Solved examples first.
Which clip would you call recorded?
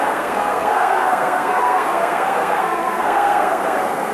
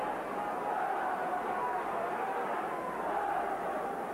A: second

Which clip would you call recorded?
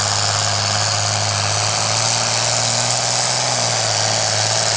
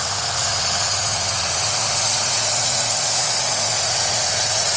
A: first